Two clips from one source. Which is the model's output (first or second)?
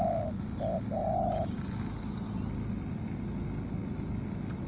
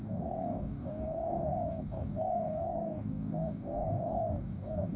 second